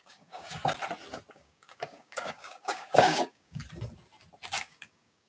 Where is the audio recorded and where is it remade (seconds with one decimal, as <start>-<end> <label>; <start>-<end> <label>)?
0.0-0.6 remade; 0.6-1.3 recorded; 1.3-3.6 remade; 3.6-4.6 recorded; 4.6-5.3 remade